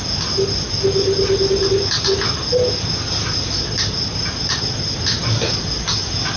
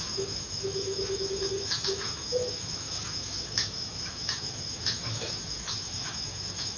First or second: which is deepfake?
second